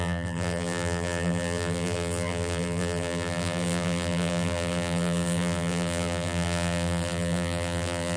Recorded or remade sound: remade